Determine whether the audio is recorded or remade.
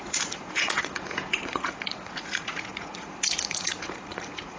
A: remade